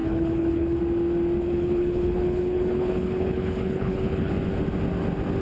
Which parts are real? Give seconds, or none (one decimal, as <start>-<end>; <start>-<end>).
0.8-1.4; 4.3-5.4